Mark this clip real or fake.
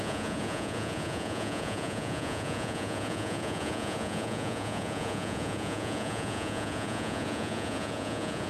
fake